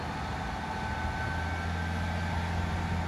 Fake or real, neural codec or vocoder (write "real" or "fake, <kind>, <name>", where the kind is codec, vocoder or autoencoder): real